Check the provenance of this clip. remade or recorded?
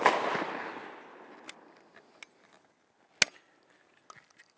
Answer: recorded